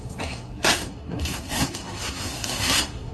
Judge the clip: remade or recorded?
remade